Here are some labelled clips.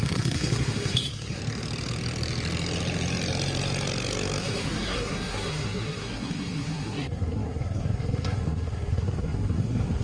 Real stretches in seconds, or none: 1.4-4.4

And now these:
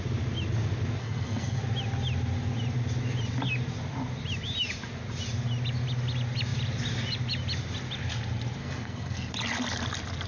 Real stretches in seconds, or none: 0.0-1.0; 1.6-8.6; 9.3-10.3

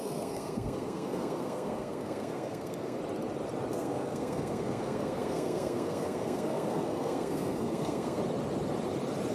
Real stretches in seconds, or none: 3.0-3.7; 8.2-9.3

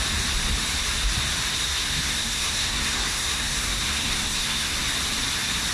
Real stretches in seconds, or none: 0.0-1.5; 4.8-5.7